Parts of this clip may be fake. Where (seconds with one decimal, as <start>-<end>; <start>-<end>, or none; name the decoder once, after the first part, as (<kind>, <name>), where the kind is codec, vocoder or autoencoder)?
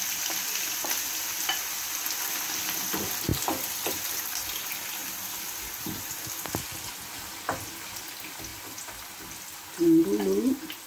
none